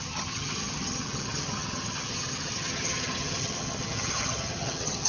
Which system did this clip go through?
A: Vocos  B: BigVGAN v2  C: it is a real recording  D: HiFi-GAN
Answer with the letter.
D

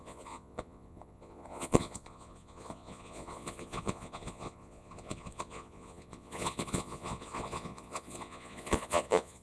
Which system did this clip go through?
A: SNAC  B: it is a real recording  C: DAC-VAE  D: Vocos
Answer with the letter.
D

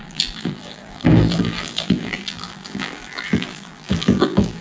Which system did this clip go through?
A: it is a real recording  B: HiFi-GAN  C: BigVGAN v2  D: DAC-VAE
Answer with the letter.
C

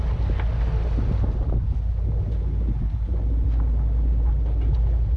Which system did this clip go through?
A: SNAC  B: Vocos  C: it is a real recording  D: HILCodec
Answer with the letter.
C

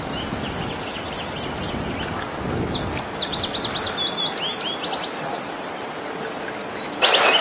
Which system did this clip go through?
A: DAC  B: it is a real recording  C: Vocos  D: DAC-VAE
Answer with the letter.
B